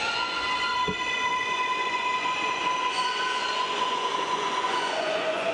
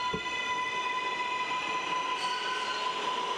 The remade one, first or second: first